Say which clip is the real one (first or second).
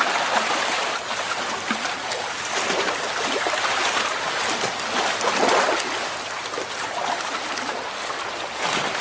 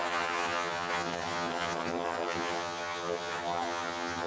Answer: first